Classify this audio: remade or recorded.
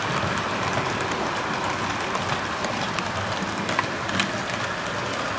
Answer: recorded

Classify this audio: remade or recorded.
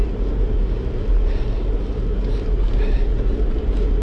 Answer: recorded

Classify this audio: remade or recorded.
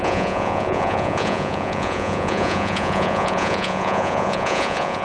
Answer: remade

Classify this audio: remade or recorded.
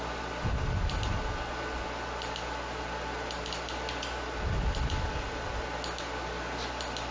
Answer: recorded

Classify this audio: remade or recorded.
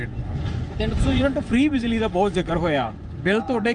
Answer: remade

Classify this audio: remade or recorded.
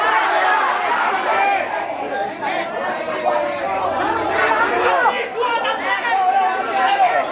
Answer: recorded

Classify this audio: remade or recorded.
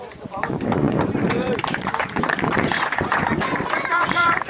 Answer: remade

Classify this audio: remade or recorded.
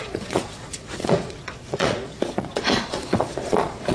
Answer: remade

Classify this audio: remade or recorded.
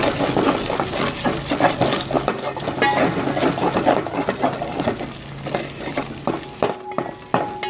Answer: recorded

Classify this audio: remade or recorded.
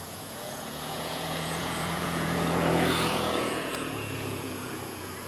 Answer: remade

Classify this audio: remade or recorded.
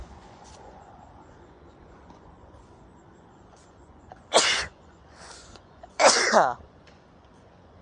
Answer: remade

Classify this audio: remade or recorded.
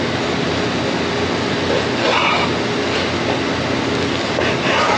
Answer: recorded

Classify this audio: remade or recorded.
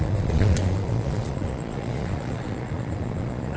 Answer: remade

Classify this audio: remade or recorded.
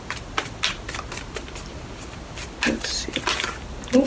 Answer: recorded